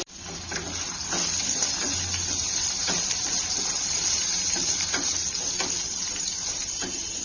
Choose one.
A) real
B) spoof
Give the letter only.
A